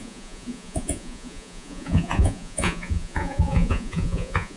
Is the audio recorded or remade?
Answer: remade